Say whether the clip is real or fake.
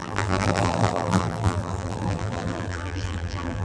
fake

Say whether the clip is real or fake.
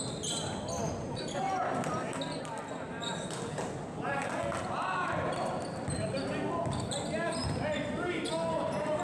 real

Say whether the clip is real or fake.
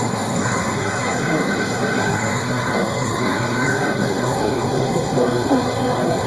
fake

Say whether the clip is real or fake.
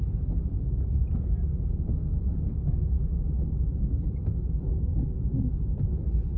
real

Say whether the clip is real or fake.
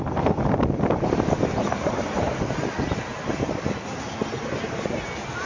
real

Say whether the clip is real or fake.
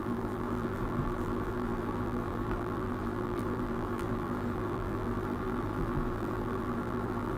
fake